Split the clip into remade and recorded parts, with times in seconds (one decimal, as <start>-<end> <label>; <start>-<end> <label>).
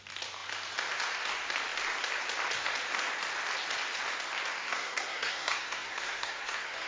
0.0-4.6 recorded; 4.6-6.9 remade